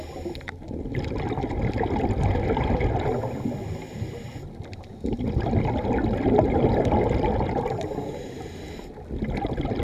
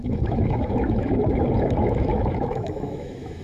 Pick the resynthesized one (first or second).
second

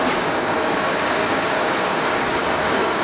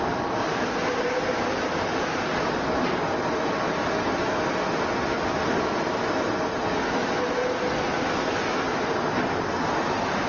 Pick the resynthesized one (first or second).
first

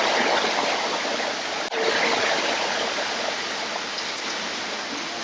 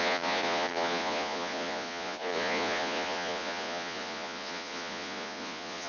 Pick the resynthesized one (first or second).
second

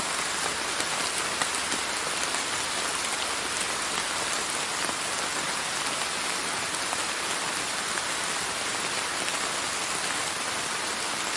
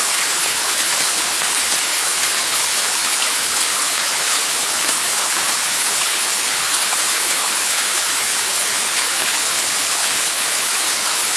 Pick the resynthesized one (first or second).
second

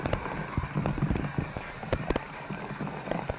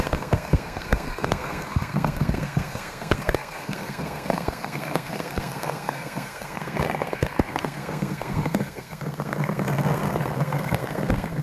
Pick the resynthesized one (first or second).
second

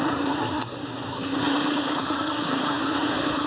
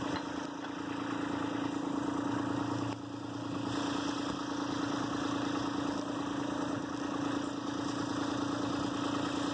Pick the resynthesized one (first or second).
first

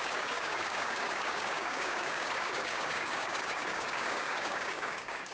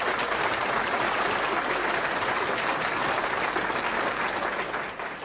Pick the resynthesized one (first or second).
first